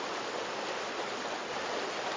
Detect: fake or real real